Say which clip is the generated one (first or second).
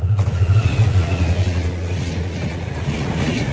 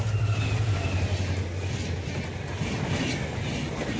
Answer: first